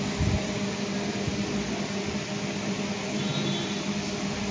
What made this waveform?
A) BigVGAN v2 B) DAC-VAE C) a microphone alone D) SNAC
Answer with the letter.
C